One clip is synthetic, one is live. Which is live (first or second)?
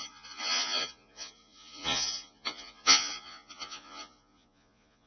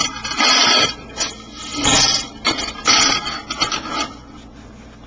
second